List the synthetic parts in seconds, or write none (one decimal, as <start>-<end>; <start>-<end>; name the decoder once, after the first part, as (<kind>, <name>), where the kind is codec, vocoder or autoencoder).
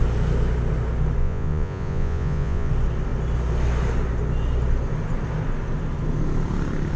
1.2-2.7 (vocoder, Vocos)